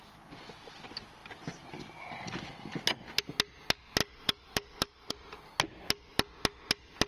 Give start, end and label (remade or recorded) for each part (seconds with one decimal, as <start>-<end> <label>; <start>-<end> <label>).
0.0-4.0 recorded; 4.0-5.1 remade; 5.1-7.1 recorded